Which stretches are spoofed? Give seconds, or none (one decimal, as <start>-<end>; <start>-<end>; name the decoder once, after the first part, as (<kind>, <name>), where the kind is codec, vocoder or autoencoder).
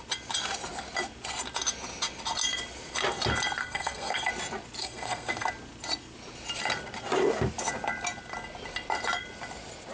3.6-4.3 (codec, SNAC); 4.8-5.5